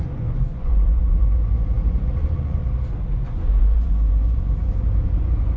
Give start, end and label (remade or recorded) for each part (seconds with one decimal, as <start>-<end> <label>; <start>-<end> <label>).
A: 0.0-2.6 remade; 2.6-3.1 recorded; 3.1-5.6 remade